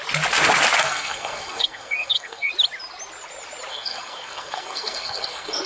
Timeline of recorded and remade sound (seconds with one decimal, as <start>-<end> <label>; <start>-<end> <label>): 0.0-0.8 recorded; 0.8-2.5 remade; 2.5-3.7 recorded; 3.7-5.7 remade